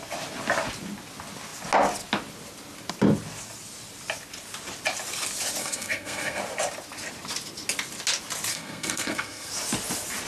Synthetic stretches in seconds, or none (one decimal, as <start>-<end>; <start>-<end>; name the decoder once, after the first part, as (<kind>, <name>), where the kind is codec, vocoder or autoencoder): 5.6-6.4 (codec, SNAC); 8.5-9.5